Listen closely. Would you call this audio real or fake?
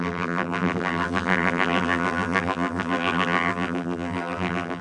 fake